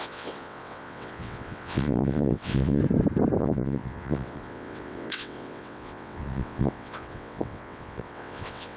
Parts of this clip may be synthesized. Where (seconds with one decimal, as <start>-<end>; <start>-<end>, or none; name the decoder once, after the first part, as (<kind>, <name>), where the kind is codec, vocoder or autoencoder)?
0.0-2.8 (vocoder, WaveNeXt); 3.4-8.8